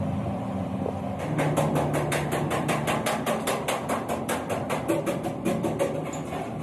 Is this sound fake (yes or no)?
no